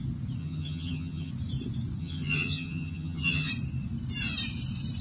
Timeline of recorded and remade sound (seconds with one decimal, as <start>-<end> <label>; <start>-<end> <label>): 0.0-0.4 recorded; 0.4-1.3 remade; 1.3-2.0 recorded; 2.0-3.5 remade; 3.5-5.0 recorded